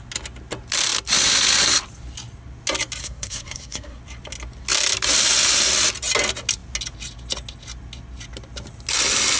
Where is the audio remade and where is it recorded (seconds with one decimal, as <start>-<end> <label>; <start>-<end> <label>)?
0.0-3.0 recorded; 3.0-4.0 remade; 4.0-9.4 recorded